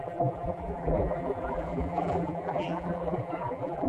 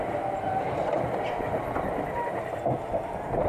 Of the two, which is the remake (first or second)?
first